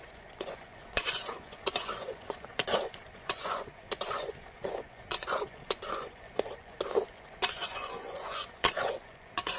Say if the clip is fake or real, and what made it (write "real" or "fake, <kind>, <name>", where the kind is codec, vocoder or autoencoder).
fake, vocoder, Vocos